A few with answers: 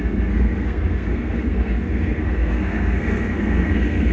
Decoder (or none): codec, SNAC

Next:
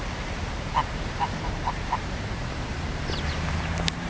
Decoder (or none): vocoder, BigVGAN v2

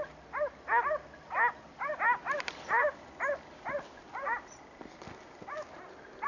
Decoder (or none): none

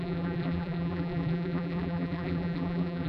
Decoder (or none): vocoder, BigVGAN v2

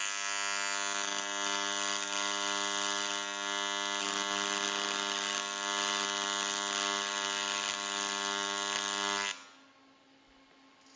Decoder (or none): none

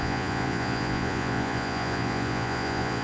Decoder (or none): vocoder, Vocos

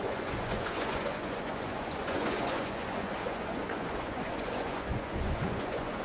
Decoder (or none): vocoder, Vocos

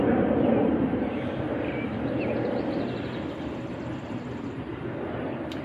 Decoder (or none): vocoder, BigVGAN v2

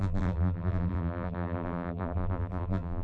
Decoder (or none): vocoder, BigVGAN v2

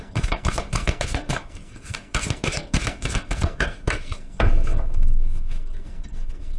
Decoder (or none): codec, SNAC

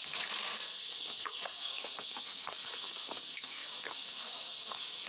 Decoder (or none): codec, SNAC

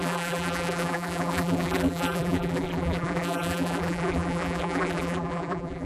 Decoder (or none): vocoder, BigVGAN v2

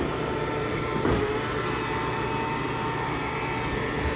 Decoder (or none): none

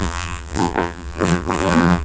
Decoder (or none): vocoder, BigVGAN v2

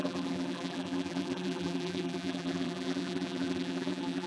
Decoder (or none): vocoder, BigVGAN v2